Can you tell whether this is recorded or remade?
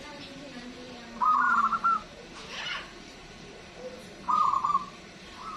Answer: remade